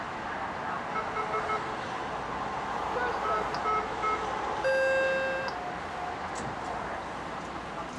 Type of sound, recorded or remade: recorded